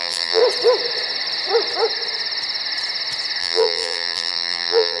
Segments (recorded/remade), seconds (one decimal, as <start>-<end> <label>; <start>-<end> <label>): 0.0-0.4 remade; 0.4-3.4 recorded; 3.4-5.0 remade